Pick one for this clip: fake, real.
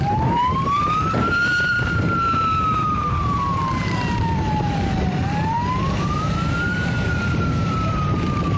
fake